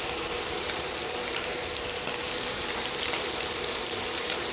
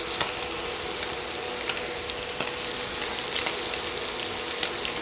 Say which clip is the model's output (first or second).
first